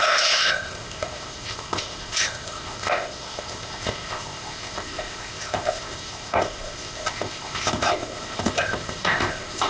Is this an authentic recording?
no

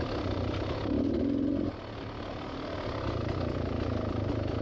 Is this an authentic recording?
yes